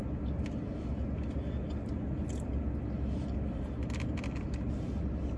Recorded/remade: recorded